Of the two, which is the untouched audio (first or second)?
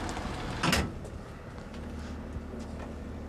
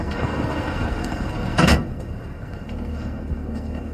first